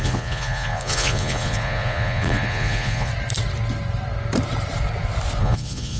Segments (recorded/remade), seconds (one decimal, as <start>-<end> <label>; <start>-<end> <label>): 0.0-3.1 remade; 3.1-5.4 recorded; 5.4-6.0 remade